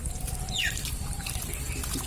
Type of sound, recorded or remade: remade